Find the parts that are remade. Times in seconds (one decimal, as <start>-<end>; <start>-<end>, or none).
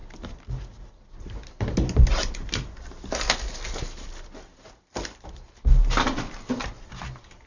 none